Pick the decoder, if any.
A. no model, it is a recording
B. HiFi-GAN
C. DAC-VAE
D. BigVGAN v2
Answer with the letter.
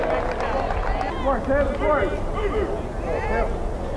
A